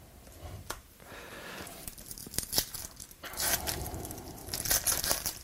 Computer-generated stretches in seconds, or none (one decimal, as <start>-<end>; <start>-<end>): 0.0-2.2; 2.8-4.4; 5.0-5.4